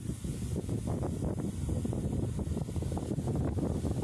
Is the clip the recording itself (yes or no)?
yes